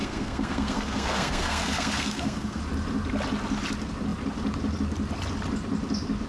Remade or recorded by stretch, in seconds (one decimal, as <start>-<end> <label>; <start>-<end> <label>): 0.0-2.6 remade; 2.6-6.3 recorded